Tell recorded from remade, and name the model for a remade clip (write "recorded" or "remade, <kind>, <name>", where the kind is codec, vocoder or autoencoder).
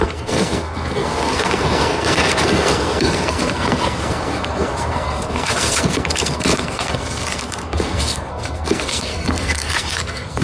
remade, codec, SNAC